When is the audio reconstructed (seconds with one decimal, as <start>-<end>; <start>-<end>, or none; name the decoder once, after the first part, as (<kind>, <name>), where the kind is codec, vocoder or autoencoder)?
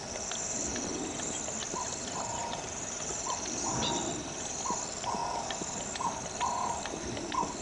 2.4-3.8 (vocoder, BigVGAN v2)